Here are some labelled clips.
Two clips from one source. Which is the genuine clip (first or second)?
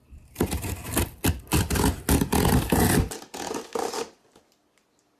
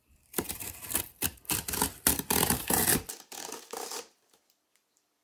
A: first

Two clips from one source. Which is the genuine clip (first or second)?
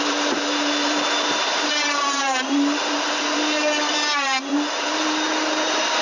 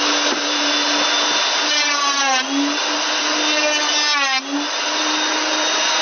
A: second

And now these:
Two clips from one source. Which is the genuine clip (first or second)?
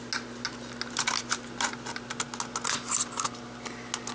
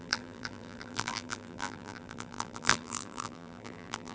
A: first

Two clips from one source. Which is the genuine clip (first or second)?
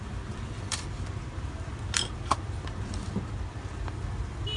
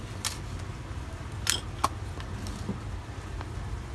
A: second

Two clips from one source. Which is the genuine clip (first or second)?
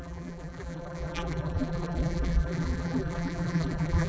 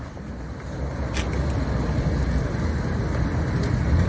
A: second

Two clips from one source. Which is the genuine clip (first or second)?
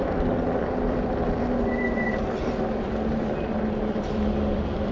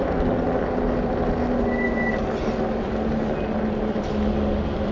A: second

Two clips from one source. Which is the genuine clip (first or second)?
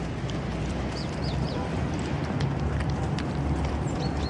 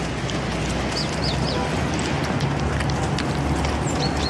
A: second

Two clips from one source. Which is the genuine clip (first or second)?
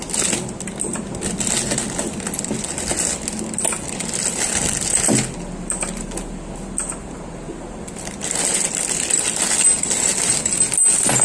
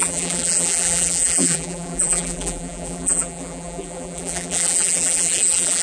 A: first